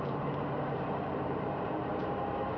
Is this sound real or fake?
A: fake